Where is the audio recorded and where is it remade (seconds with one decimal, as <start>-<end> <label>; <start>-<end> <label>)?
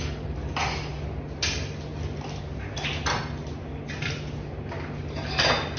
0.0-5.8 recorded